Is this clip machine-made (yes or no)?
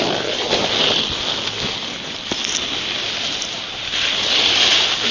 no